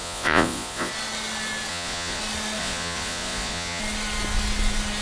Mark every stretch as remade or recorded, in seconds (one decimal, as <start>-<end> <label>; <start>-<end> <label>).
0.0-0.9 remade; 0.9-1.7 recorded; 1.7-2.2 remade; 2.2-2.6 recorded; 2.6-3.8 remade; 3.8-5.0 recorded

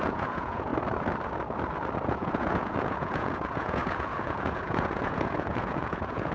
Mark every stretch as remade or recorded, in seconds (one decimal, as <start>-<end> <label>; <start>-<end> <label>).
0.0-0.7 remade; 0.7-2.1 recorded; 2.1-6.3 remade

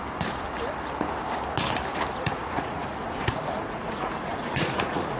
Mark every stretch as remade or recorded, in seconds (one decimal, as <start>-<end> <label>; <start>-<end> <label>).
0.0-2.1 recorded; 2.1-5.2 remade

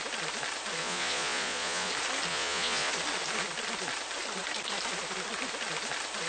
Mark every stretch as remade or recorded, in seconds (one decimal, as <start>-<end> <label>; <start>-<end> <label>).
0.0-0.8 recorded; 0.8-1.9 remade; 1.9-2.3 recorded; 2.3-2.9 remade; 2.9-6.3 recorded